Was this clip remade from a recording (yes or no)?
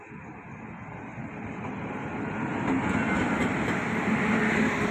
no